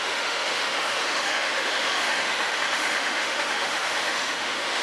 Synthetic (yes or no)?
yes